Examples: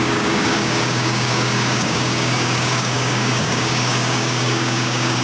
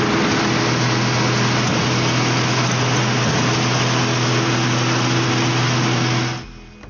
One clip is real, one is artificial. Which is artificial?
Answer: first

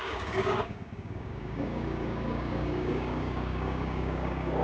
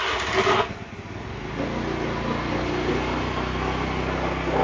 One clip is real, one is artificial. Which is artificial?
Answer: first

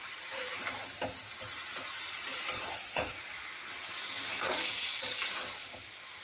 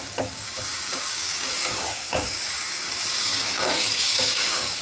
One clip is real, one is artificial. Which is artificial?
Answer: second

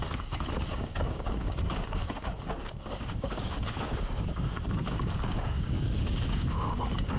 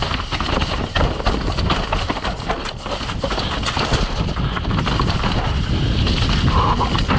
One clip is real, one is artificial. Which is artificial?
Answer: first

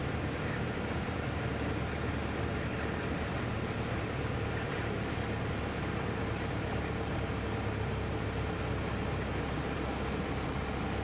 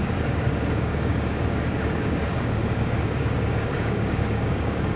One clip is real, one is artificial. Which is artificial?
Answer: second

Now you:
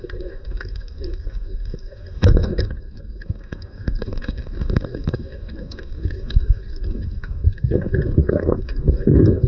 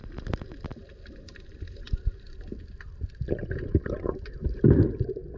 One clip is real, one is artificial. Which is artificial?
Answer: first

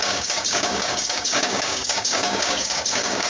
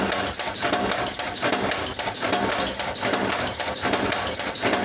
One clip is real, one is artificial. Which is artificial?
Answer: first